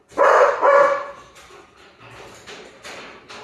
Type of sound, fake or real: real